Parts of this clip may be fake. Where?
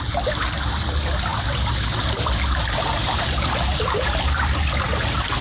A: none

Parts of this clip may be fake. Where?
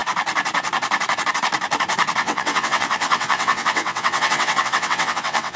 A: 2.2-5.6 (vocoder, WaveNeXt)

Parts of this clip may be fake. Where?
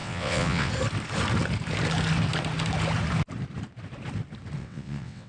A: 0.0-0.7 (vocoder, WaveNeXt); 4.6-5.3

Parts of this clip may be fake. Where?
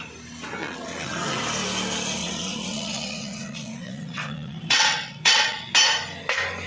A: 0.6-1.4 (vocoder, WaveNeXt); 2.2-5.7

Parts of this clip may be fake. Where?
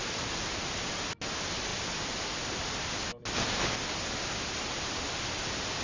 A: none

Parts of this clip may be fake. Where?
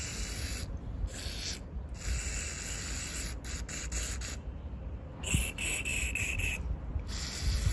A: none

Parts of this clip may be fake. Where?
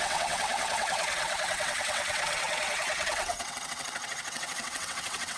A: 0.0-5.4 (vocoder, WaveNeXt)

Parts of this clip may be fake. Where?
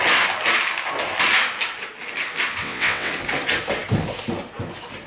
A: 2.6-3.1 (vocoder, WaveNeXt)